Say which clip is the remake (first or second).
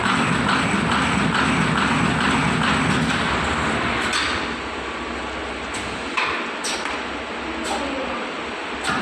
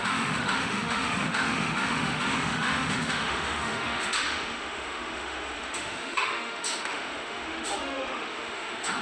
second